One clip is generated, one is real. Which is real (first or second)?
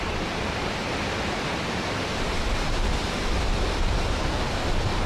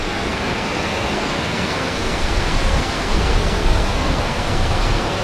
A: first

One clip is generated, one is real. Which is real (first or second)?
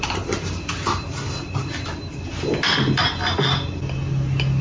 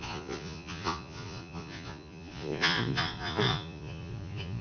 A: first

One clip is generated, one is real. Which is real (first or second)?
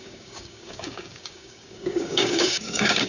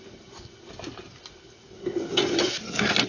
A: second